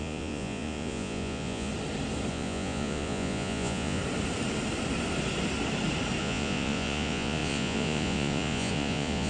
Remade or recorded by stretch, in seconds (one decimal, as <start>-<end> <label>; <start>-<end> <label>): 0.0-1.7 remade; 1.7-2.3 recorded; 2.3-4.0 remade; 4.0-6.2 recorded; 6.2-9.3 remade

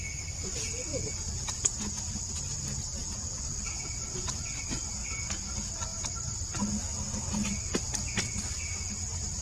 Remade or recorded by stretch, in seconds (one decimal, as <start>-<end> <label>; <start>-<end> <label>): 0.0-0.9 recorded; 0.9-2.1 remade; 2.1-2.9 recorded; 2.9-3.4 remade; 3.4-5.0 recorded; 5.0-5.5 remade; 5.5-9.4 recorded

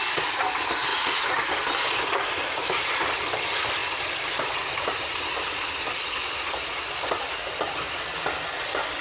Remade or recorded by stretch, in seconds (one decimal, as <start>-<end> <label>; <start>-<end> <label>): 0.0-0.9 recorded; 0.9-1.4 remade; 1.4-9.0 recorded

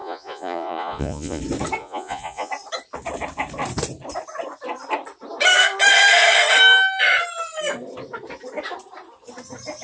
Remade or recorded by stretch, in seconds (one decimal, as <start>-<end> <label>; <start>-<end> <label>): 0.0-1.4 remade; 1.4-1.8 recorded; 1.8-2.5 remade; 2.5-9.8 recorded

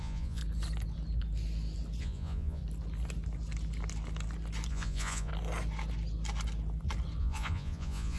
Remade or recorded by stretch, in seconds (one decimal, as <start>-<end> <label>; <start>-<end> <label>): 0.0-0.4 remade; 0.4-2.0 recorded; 2.0-2.6 remade; 2.6-4.7 recorded; 4.7-5.3 remade; 5.3-7.2 recorded; 7.2-8.2 remade